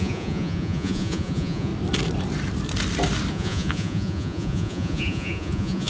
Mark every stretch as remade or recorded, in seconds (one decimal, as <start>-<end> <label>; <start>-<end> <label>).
0.0-1.7 remade; 1.7-3.3 recorded; 3.3-5.9 remade